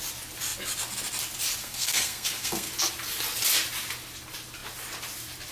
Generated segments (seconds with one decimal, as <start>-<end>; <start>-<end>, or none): 1.6-2.7